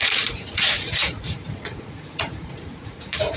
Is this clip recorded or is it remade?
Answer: remade